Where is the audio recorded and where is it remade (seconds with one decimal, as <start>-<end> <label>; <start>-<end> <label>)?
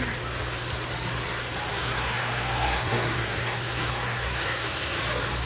0.0-1.7 recorded; 1.7-5.0 remade; 5.0-5.5 recorded